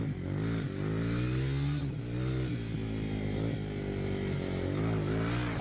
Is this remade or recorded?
recorded